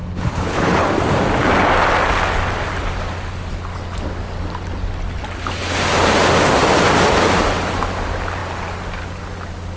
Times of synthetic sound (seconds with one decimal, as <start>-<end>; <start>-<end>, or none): 0.0-0.9